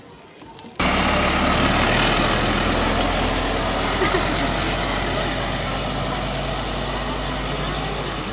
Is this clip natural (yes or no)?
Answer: yes